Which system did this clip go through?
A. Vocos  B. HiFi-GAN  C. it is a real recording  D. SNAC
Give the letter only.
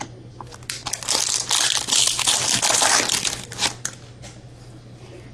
C